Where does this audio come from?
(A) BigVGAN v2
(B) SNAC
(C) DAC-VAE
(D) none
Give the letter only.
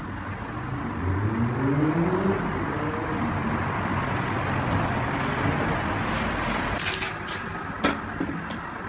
D